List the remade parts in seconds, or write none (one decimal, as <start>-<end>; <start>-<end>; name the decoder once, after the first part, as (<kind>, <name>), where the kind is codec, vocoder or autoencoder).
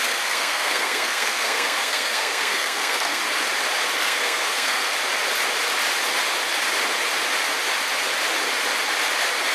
0.0-3.2 (codec, SNAC); 4.0-4.9